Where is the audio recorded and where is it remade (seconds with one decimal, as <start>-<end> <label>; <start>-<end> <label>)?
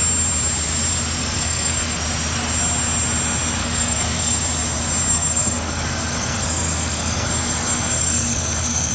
0.0-1.2 recorded; 1.2-2.0 remade; 2.0-3.6 recorded; 3.6-4.4 remade; 4.4-5.1 recorded; 5.1-8.9 remade